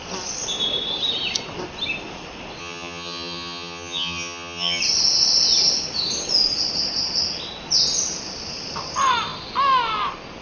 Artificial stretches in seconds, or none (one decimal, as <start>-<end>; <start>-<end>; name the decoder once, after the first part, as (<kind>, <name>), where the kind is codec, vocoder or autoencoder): 2.6-4.8 (vocoder, HiFi-GAN)